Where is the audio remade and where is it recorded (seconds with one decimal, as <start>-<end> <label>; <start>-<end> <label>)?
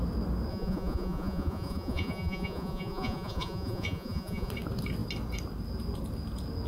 0.0-0.5 recorded; 0.5-4.5 remade; 4.5-6.7 recorded